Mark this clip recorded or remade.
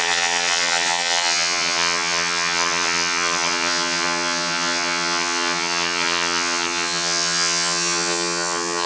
remade